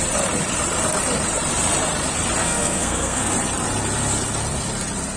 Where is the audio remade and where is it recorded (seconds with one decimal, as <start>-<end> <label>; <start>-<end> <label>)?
0.0-2.4 recorded; 2.4-3.3 remade; 3.3-5.2 recorded